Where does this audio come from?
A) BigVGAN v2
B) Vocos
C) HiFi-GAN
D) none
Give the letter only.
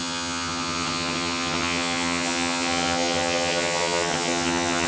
C